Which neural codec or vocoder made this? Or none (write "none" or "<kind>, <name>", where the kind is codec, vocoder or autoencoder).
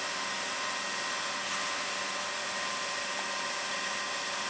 none